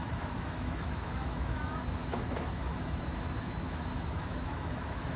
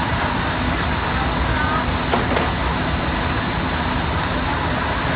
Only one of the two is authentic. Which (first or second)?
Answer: second